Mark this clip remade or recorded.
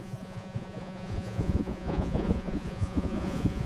remade